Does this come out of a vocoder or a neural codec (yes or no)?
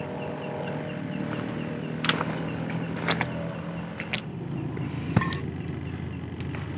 no